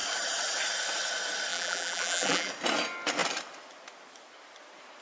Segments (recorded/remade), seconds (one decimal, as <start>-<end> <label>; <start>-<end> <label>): 0.0-1.5 recorded; 1.5-2.5 remade; 2.5-5.0 recorded